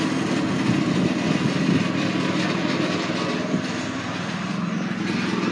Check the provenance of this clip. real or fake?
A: real